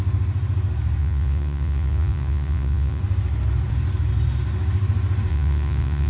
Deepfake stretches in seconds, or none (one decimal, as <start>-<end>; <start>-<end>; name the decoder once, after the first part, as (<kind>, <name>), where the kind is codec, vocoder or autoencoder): 1.0-3.0 (vocoder, Vocos); 5.3-6.1